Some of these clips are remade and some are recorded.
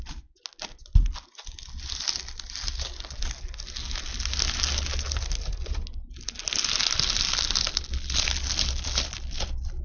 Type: recorded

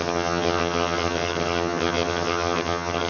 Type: remade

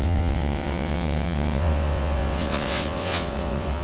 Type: remade